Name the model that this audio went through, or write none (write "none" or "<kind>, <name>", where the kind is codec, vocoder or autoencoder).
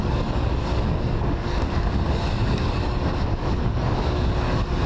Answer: codec, DAC